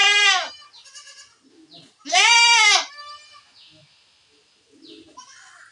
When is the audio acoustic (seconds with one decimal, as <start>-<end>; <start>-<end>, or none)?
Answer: 0.0-5.7